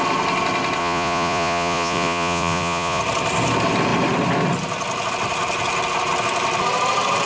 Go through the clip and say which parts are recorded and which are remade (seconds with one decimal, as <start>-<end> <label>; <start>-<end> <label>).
0.0-0.8 recorded; 0.8-3.0 remade; 3.0-7.3 recorded